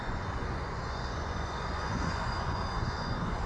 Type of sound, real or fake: fake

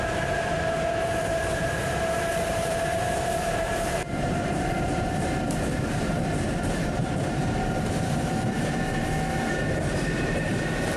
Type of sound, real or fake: fake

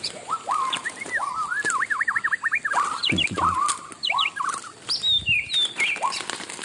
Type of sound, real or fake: real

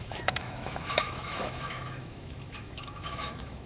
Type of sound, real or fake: fake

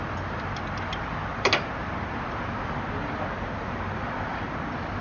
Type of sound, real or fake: real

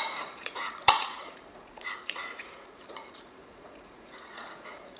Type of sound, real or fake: fake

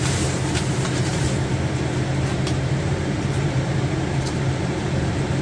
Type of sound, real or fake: fake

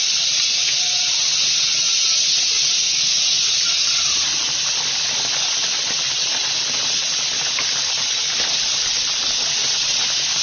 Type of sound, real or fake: real